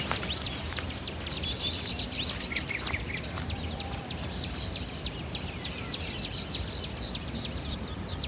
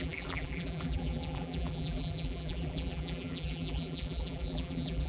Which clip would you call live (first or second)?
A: first